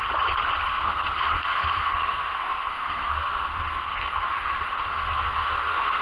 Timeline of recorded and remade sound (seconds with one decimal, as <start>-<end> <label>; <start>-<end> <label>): 0.0-0.7 recorded; 0.7-4.3 remade; 4.3-4.9 recorded; 4.9-6.0 remade